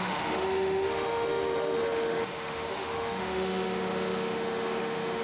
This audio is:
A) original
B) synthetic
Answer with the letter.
B